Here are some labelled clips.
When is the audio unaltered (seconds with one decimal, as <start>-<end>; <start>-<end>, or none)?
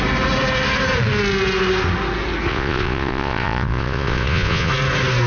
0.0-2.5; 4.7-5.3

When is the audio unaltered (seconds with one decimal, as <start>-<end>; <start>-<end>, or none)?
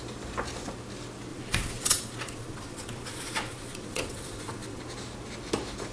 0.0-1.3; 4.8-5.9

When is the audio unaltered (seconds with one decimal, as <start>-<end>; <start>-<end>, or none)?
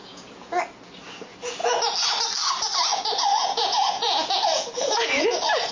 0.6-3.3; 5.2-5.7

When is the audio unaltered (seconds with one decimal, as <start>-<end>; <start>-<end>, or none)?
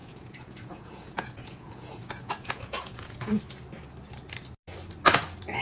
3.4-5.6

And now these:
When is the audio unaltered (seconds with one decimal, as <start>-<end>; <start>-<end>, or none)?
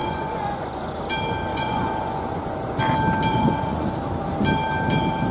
1.0-1.5; 2.8-3.3; 3.9-5.3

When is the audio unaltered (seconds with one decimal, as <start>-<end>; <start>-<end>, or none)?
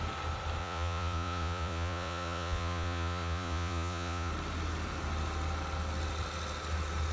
0.0-0.6; 4.3-7.1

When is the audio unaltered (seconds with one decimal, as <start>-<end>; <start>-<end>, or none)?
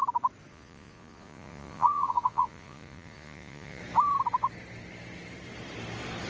0.0-0.5; 3.8-6.3